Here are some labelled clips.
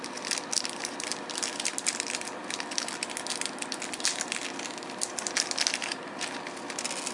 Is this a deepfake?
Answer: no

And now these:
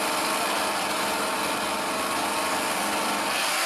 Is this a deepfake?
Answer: no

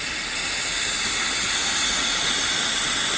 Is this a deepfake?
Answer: no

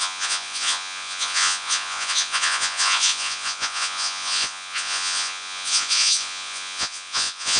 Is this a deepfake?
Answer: yes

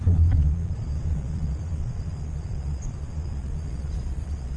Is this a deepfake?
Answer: yes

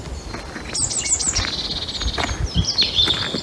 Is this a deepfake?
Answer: no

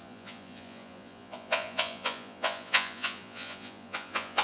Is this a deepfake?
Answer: yes